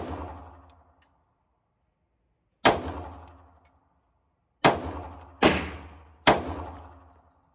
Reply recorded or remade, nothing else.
recorded